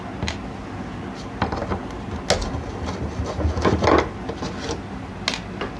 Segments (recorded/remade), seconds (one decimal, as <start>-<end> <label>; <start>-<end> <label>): 0.0-5.8 recorded